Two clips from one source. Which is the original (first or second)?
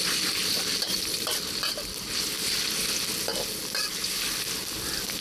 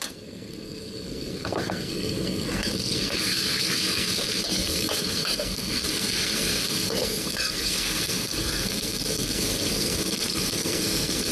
first